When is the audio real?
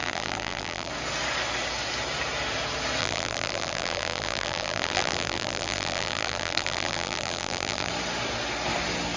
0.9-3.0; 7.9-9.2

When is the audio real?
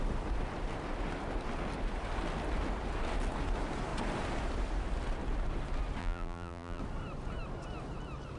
0.0-6.0; 6.8-8.4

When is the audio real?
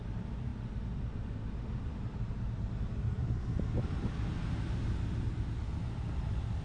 0.0-6.6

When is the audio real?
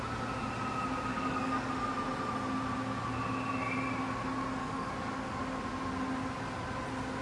0.0-1.1; 1.7-4.6; 5.3-7.2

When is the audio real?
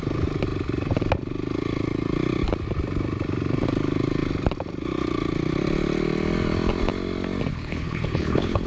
0.0-7.5